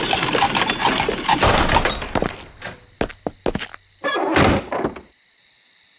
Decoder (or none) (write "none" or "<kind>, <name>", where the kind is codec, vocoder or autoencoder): none